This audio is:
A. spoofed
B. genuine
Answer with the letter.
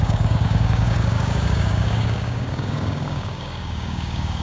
A